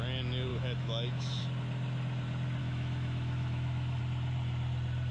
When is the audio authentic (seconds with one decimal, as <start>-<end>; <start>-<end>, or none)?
0.0-0.5; 1.4-2.6; 4.0-5.1